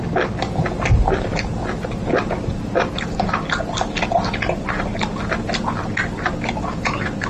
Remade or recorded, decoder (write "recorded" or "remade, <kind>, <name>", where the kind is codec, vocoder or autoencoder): recorded